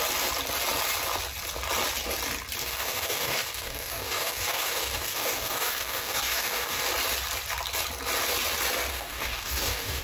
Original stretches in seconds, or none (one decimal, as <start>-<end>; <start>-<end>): 0.0-2.6; 6.8-8.9